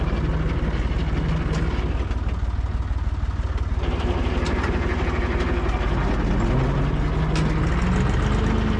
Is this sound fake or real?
real